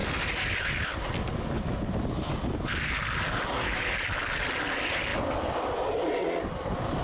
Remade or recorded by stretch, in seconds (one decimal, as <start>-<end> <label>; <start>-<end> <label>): 0.0-7.0 recorded